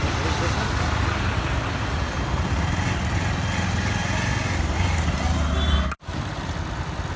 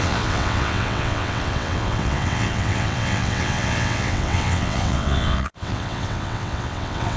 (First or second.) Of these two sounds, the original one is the first